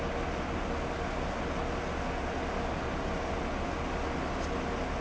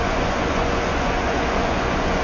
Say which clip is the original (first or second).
first